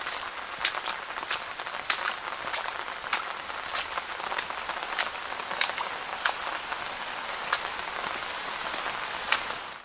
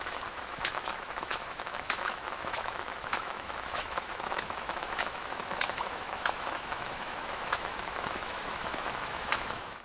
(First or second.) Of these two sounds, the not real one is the second